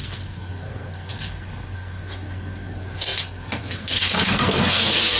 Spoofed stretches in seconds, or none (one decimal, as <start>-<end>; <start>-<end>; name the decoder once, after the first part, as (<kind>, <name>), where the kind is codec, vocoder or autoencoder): 0.0-5.2 (codec, SNAC)